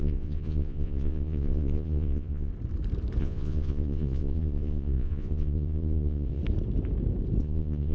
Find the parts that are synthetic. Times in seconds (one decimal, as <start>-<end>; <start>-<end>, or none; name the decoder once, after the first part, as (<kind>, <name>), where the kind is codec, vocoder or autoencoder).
0.0-2.5 (vocoder, Vocos); 3.2-6.4; 7.4-7.9